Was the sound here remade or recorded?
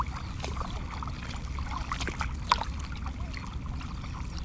recorded